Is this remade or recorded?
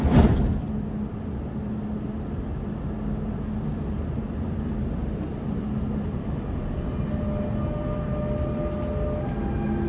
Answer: recorded